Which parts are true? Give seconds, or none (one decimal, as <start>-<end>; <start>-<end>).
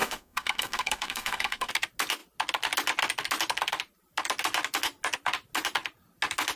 1.7-6.6